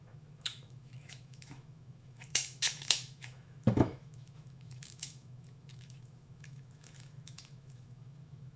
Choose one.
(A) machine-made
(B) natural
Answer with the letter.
A